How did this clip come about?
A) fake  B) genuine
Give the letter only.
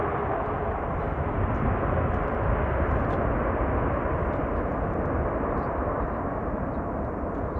B